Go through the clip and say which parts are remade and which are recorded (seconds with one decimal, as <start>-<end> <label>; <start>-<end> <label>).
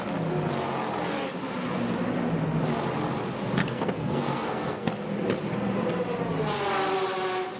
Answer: 0.0-3.6 recorded; 3.6-4.9 remade; 4.9-7.6 recorded